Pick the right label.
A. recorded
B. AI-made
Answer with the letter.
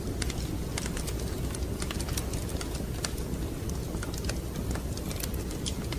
A